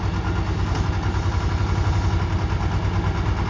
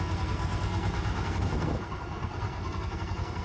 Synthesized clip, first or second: second